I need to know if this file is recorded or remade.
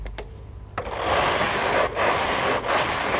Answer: recorded